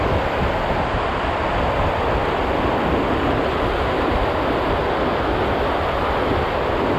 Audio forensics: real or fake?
real